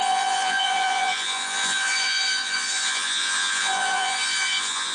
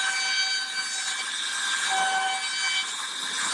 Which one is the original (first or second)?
second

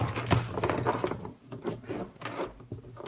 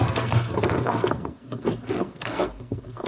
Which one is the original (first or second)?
first